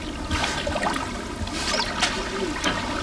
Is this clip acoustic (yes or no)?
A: yes